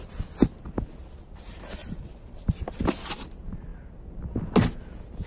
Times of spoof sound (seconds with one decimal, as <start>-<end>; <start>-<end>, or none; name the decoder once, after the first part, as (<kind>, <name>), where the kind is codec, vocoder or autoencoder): none